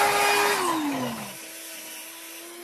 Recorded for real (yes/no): yes